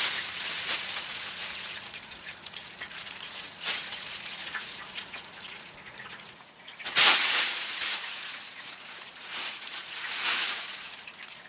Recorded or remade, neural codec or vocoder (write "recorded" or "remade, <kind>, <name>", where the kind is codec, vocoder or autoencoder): remade, vocoder, Vocos